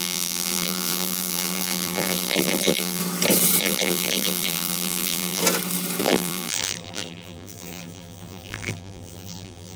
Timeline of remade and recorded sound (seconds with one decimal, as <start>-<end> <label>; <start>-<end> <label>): 0.0-3.0 remade; 3.0-3.6 recorded; 3.6-5.4 remade; 5.4-6.0 recorded; 6.0-9.8 remade